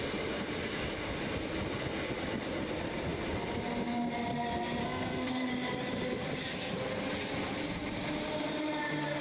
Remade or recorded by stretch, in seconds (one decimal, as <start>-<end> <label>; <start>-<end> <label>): 0.0-4.8 recorded; 4.8-5.5 remade; 5.5-9.2 recorded